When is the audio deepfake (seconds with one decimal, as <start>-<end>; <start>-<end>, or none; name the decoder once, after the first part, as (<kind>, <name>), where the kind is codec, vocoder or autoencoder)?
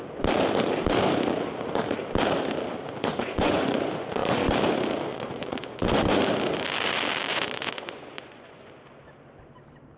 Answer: 3.1-4.5 (vocoder, Vocos); 5.1-6.2; 7.3-8.7